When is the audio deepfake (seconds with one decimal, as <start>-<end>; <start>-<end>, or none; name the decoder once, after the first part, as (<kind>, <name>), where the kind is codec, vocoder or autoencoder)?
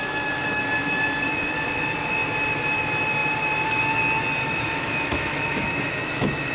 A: 0.0-0.6 (autoencoder, DAC-VAE); 4.4-6.5